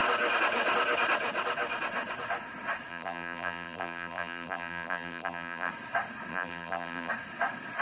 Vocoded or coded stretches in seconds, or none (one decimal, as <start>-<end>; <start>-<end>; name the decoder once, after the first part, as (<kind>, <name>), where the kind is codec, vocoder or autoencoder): 2.9-5.7 (vocoder, BigVGAN v2); 6.3-7.1